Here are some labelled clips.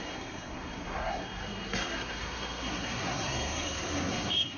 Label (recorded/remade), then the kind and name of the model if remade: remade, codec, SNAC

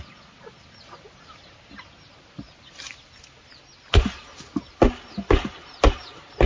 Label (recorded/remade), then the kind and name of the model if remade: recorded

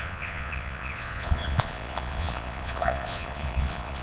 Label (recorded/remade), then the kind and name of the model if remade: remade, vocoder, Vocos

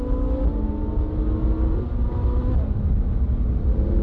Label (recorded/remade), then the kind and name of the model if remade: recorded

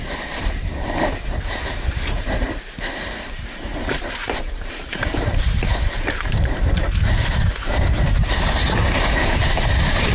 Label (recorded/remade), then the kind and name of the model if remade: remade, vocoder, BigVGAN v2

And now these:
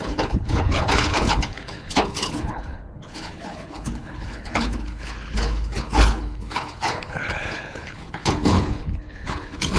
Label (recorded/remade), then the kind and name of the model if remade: remade, codec, HILCodec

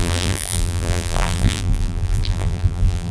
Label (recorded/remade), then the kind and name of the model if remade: remade, vocoder, BigVGAN v2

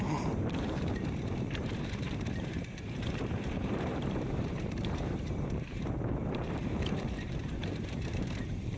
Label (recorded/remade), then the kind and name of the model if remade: remade, vocoder, BigVGAN v2